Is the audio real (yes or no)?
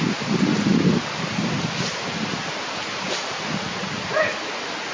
yes